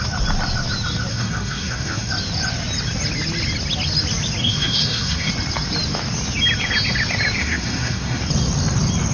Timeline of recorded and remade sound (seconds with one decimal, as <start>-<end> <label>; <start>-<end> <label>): 0.0-1.1 recorded; 1.1-2.1 remade; 2.1-4.4 recorded; 4.4-5.3 remade; 5.3-7.4 recorded; 7.4-8.2 remade; 8.2-9.1 recorded